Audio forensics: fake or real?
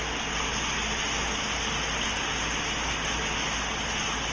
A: real